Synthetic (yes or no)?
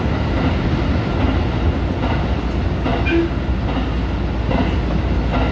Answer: no